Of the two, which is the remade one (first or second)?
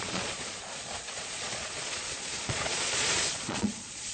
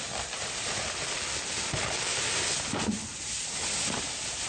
first